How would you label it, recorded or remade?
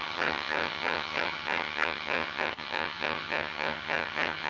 remade